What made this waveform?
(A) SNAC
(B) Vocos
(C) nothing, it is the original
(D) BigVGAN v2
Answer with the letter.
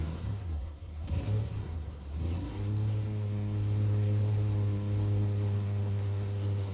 A